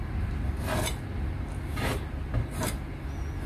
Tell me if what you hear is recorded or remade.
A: recorded